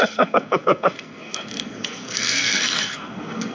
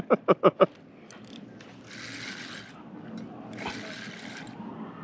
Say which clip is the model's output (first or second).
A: first